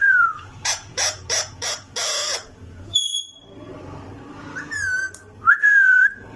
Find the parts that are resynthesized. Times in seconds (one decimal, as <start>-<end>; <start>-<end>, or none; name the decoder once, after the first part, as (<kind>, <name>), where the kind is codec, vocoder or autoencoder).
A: 0.0-3.3 (vocoder, Vocos); 5.5-6.4